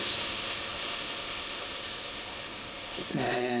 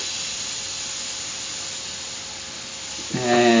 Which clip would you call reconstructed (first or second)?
first